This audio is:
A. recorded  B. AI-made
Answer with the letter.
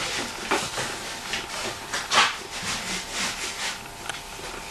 A